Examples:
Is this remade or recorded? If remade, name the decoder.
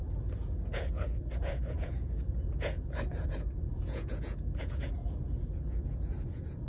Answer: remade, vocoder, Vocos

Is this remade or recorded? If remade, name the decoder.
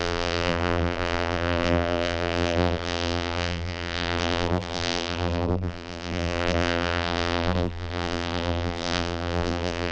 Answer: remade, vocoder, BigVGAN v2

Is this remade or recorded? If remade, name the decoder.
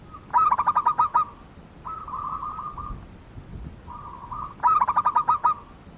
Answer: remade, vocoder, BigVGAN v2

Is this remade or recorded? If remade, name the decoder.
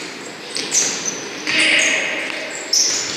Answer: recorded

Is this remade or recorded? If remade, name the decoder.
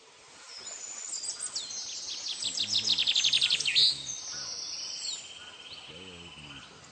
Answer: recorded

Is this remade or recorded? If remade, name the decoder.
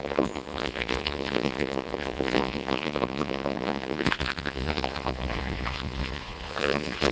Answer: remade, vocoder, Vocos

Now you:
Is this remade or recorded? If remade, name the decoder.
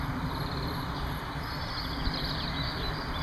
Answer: remade, vocoder, BigVGAN v2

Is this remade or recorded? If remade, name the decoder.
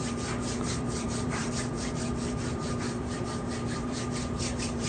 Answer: remade, vocoder, BigVGAN v2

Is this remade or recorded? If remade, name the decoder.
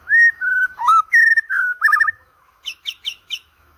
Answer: remade, autoencoder, DAC-VAE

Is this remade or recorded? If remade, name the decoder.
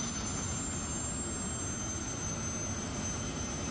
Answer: recorded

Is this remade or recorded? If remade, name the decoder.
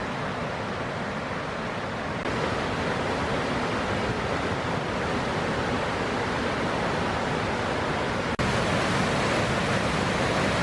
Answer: recorded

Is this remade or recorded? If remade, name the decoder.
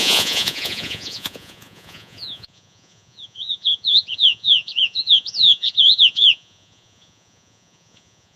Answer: remade, vocoder, Vocos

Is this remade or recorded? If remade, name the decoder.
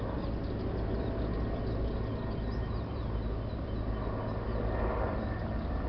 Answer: recorded